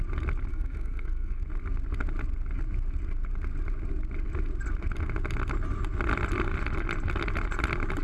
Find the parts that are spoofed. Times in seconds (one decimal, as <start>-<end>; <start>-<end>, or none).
0.5-1.4